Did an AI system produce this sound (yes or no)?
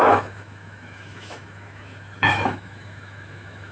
yes